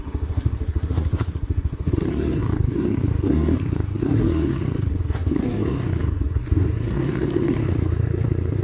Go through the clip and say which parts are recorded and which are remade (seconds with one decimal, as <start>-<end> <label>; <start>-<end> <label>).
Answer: 0.0-8.6 remade